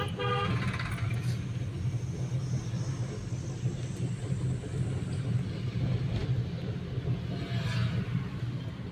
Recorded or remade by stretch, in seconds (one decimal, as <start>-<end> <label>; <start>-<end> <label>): 0.0-8.9 recorded